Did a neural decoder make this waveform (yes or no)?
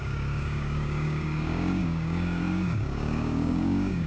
yes